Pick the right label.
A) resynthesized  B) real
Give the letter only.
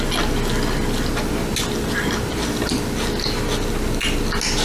B